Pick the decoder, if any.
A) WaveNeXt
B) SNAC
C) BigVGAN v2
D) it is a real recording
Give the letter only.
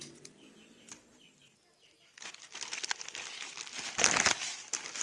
D